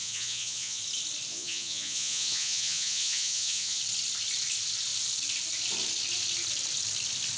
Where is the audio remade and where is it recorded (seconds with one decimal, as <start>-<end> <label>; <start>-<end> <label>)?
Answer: 0.0-0.8 remade; 0.8-1.3 recorded; 1.3-3.8 remade; 3.8-7.4 recorded

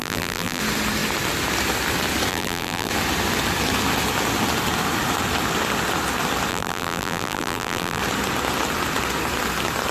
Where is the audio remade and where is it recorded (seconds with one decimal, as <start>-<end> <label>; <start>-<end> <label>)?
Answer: 0.0-0.6 remade; 0.6-2.3 recorded; 2.3-2.9 remade; 2.9-6.5 recorded; 6.5-8.0 remade; 8.0-9.9 recorded